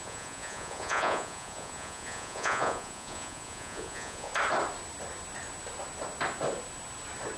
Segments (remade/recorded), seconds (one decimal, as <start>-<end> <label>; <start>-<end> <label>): 0.0-4.3 remade; 4.3-7.4 recorded